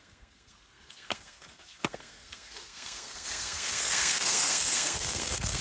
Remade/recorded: remade